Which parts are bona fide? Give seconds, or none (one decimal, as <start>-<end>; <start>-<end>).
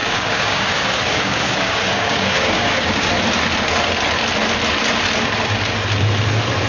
3.1-6.7